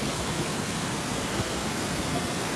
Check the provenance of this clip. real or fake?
fake